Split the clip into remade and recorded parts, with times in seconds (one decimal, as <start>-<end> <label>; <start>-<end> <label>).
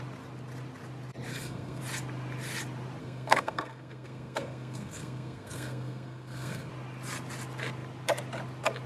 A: 0.0-1.3 recorded; 1.3-1.8 remade; 1.8-3.0 recorded; 3.0-6.7 remade; 6.7-8.9 recorded